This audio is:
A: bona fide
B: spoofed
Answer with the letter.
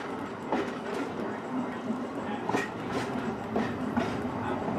A